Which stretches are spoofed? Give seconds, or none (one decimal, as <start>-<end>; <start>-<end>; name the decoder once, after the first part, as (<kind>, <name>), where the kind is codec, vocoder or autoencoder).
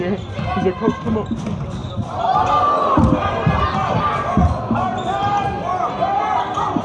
none